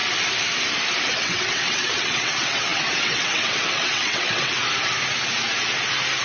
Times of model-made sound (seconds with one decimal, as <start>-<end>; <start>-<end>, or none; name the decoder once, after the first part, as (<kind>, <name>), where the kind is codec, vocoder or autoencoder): 1.1-4.5 (vocoder, WaveNeXt)